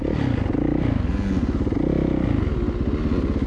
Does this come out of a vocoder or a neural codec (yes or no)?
no